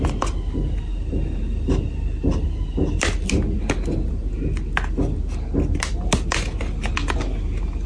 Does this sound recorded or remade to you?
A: recorded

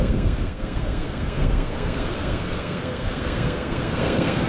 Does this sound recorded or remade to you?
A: remade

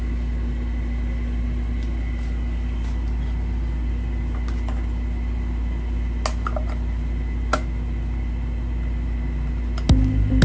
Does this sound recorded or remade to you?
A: recorded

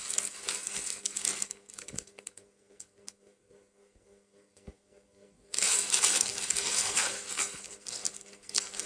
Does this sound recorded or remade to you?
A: remade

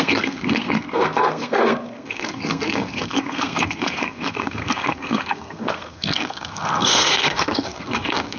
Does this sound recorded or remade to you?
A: remade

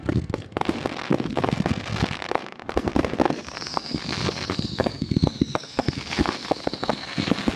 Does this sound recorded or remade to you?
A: remade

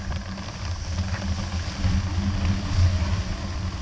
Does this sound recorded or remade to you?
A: recorded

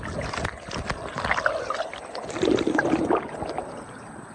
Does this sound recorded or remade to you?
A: recorded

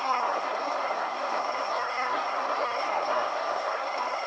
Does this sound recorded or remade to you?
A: remade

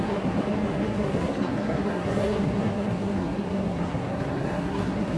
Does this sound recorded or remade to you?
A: remade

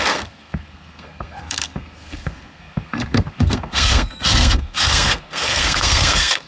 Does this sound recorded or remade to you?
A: remade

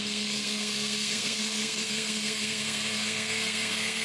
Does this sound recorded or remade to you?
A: remade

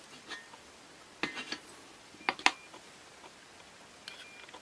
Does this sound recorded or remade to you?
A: recorded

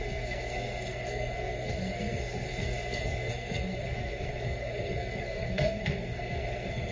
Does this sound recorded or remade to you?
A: remade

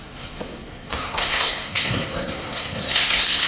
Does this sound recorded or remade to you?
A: remade